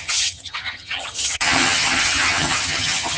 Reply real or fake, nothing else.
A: fake